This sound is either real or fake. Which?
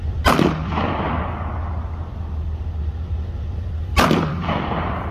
fake